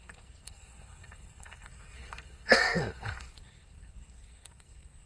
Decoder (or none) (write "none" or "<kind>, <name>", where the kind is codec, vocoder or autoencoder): codec, SNAC